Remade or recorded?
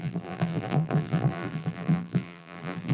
remade